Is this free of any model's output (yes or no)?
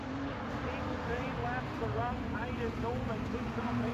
yes